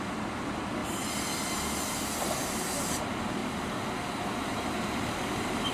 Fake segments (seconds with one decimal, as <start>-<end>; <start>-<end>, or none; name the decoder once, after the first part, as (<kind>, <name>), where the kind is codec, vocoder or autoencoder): 0.0-3.4 (vocoder, BigVGAN v2); 4.4-5.7